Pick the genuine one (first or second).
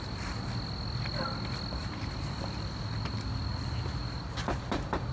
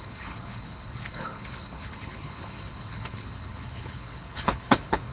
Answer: first